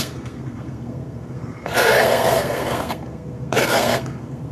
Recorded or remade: remade